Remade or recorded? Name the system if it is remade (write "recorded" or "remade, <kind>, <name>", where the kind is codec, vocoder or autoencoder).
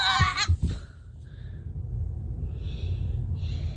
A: recorded